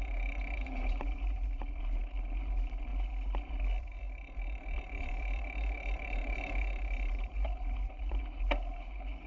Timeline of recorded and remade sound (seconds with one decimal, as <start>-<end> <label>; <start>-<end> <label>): 0.0-2.9 remade; 2.9-3.8 recorded; 3.8-9.3 remade